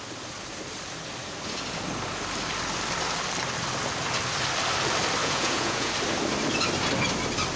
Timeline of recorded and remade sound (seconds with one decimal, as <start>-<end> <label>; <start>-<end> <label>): 0.0-5.2 recorded; 5.2-5.9 remade; 5.9-7.6 recorded